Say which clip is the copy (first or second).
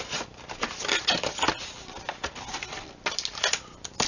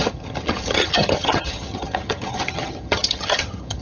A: second